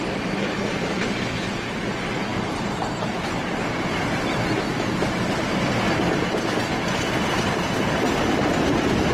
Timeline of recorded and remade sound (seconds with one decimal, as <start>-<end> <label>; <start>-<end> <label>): 0.0-9.1 recorded

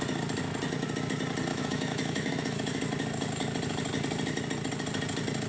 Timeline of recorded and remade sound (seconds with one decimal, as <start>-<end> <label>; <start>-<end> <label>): 0.0-1.5 recorded; 1.5-2.8 remade; 2.8-5.5 recorded

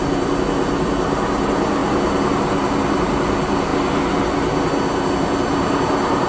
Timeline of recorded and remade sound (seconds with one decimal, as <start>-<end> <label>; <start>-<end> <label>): 0.0-6.3 recorded

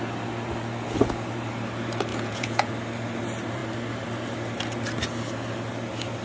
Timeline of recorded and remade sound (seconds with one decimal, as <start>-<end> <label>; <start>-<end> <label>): 0.0-2.1 recorded; 2.1-2.7 remade; 2.7-6.2 recorded

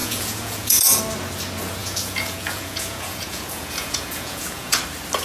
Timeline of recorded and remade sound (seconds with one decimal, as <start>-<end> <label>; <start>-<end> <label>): 0.0-1.0 remade; 1.0-1.8 recorded; 1.8-4.8 remade; 4.8-5.2 recorded

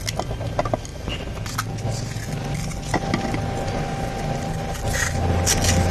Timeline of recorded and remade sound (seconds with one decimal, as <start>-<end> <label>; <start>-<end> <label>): 0.0-5.9 recorded